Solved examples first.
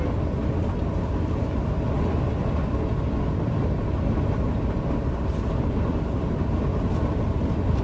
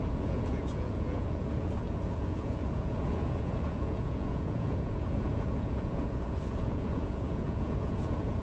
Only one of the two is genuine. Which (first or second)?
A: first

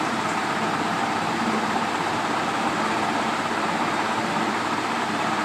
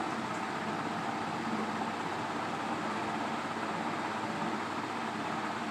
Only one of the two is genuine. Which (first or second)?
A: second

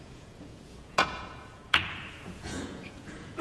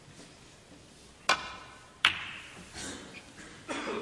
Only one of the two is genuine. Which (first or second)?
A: second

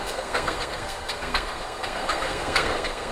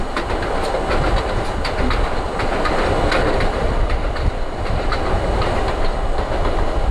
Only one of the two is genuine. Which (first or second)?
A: second